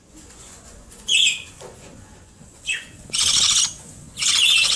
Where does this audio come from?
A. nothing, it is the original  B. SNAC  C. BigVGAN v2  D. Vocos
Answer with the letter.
D